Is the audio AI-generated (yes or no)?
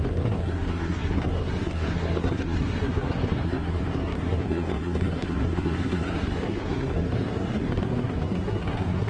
yes